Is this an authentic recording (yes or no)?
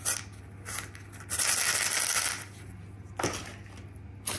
yes